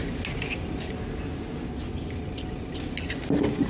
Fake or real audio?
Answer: real